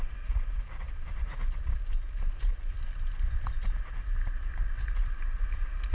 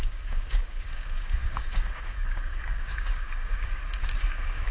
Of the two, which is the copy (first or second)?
second